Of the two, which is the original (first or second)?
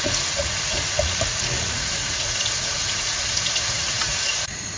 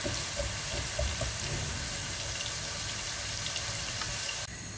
second